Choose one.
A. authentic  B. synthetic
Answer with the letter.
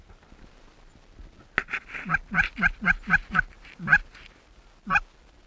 A